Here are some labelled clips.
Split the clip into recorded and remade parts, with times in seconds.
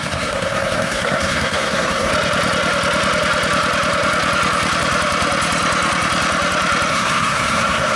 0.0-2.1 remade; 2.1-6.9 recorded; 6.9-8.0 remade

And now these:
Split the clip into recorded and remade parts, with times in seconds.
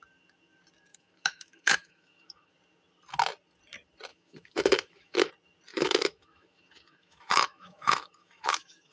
0.0-0.9 recorded; 0.9-2.5 remade; 2.5-4.1 recorded; 4.1-5.3 remade; 5.3-5.7 recorded; 5.7-8.9 remade